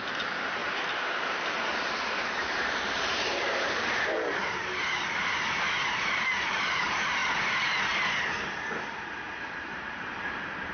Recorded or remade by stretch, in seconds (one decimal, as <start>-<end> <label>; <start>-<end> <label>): 0.0-7.2 remade; 7.2-9.7 recorded; 9.7-10.7 remade